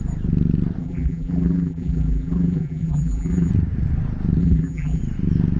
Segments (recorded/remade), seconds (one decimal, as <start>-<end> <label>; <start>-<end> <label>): 0.0-0.8 recorded; 0.8-3.5 remade; 3.5-4.4 recorded; 4.4-5.0 remade; 5.0-5.6 recorded